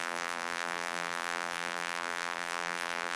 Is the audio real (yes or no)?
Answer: no